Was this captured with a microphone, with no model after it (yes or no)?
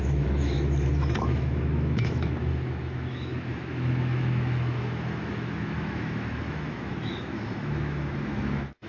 no